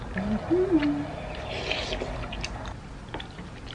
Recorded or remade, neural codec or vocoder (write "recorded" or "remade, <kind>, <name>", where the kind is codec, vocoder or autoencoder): recorded